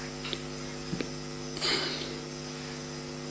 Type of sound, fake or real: real